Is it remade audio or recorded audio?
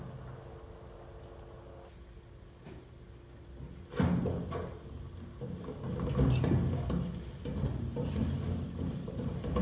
recorded